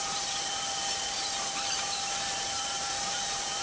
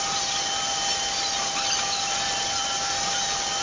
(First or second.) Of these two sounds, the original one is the second